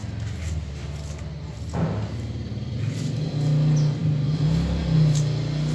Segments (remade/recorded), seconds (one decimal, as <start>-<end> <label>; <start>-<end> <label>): 0.0-5.7 recorded